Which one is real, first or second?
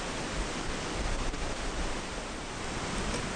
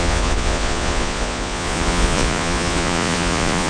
first